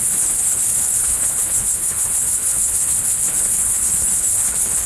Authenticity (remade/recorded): remade